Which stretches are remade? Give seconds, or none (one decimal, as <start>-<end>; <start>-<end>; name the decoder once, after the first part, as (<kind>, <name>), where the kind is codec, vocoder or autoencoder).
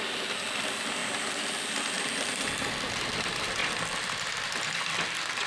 none